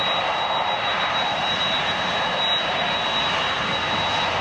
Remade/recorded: recorded